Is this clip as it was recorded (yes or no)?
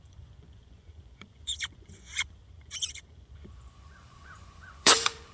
no